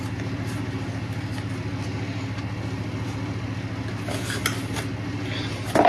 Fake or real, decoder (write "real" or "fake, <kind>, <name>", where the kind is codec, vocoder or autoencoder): real